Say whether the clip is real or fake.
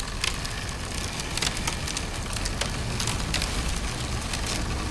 real